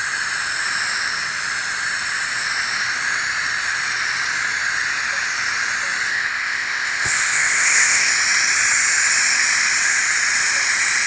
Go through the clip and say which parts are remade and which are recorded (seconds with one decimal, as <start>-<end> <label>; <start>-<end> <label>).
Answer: 0.0-6.1 recorded; 6.1-8.1 remade; 8.1-11.1 recorded